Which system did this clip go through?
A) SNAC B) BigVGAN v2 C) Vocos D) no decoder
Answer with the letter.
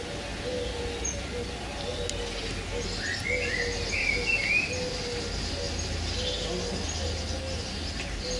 D